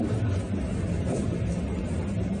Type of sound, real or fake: real